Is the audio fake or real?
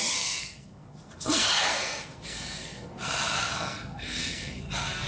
fake